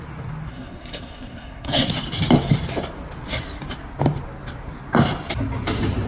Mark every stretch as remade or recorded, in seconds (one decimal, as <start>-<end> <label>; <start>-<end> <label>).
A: 0.0-0.5 recorded; 0.5-1.9 remade; 1.9-6.1 recorded